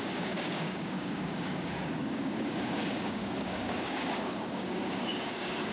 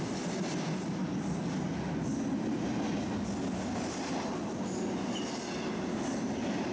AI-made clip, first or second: first